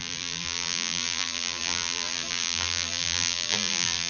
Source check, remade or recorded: remade